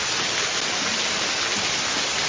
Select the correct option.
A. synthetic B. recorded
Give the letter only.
B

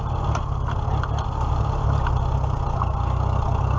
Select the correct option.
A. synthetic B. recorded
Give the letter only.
B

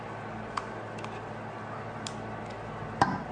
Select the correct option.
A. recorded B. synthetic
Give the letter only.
A